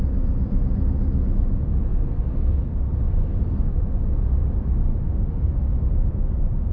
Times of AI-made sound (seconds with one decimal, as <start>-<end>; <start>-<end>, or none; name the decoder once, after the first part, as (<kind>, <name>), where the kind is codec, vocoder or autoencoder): 4.9-5.7 (autoencoder, DAC-VAE)